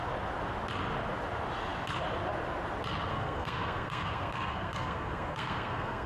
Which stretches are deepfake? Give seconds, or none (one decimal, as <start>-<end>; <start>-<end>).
3.1-6.1